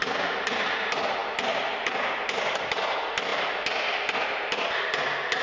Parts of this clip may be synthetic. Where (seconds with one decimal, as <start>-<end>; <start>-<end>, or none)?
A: none